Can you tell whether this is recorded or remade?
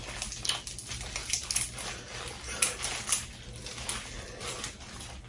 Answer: recorded